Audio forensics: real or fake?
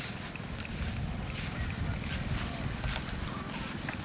real